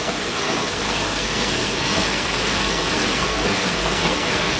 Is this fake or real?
fake